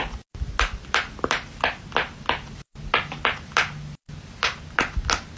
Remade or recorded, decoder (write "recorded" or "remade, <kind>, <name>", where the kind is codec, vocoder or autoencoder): recorded